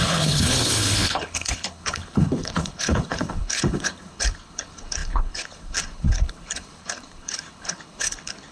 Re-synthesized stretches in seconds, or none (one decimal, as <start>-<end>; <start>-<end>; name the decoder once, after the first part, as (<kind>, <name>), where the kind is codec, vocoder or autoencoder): 0.0-8.5 (codec, HILCodec)